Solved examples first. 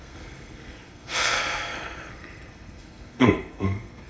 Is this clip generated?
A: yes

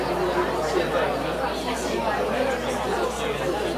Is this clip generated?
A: no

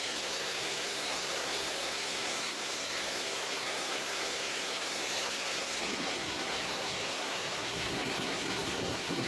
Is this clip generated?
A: yes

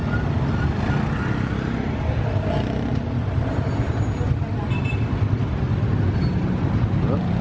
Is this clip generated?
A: no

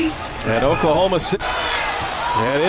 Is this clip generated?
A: yes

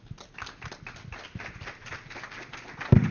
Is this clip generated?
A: no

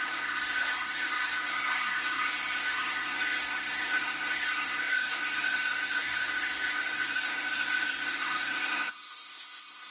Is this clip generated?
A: yes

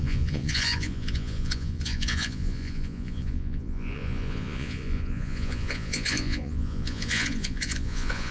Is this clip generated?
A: yes